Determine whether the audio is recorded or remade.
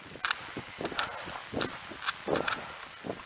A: recorded